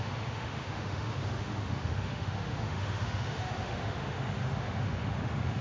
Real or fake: fake